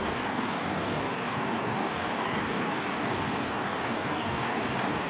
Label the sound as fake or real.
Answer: fake